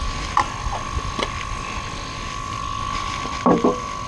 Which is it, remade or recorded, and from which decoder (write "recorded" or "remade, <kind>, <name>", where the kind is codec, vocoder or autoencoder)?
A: recorded